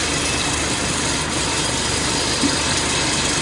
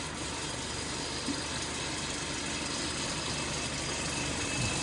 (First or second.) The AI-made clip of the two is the first